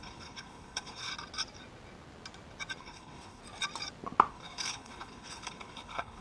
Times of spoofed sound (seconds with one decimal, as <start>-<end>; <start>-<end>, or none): 0.0-1.1; 2.8-3.4; 4.3-6.2